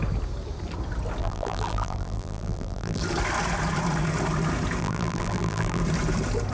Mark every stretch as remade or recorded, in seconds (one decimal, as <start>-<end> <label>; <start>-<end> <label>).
0.0-1.2 recorded; 1.2-3.0 remade; 3.0-4.8 recorded; 4.8-5.8 remade; 5.8-6.5 recorded